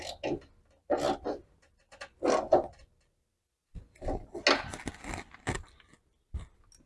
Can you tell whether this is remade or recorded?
recorded